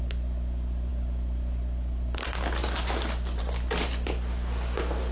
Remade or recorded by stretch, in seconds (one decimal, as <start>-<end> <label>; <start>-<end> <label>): 0.0-5.1 recorded